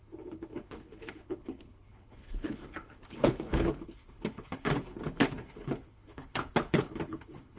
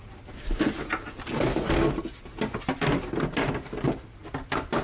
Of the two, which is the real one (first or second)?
second